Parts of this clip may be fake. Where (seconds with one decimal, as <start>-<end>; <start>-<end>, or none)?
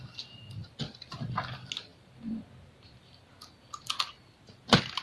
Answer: 0.6-1.1; 1.9-4.1